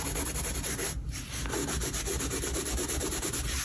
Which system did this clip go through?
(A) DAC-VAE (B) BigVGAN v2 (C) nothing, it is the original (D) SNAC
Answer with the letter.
C